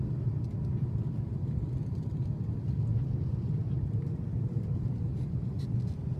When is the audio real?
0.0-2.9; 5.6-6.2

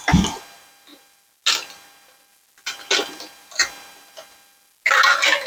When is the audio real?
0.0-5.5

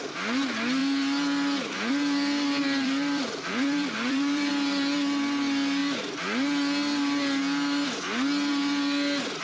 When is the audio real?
0.0-2.6; 4.5-9.4